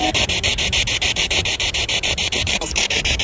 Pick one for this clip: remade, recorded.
remade